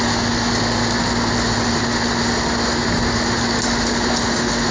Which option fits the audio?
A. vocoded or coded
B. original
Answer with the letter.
B